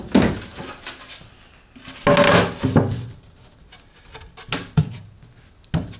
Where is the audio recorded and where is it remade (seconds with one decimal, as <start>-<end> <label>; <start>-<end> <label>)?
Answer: 0.0-6.0 recorded